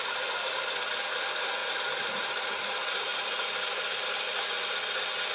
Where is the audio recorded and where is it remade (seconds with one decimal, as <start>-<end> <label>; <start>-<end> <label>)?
0.0-5.3 recorded